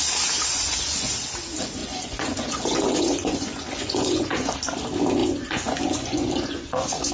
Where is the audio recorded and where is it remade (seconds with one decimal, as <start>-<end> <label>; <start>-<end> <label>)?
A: 0.0-0.5 recorded; 0.5-1.1 remade; 1.1-1.8 recorded; 1.8-4.5 remade; 4.5-5.2 recorded; 5.2-7.1 remade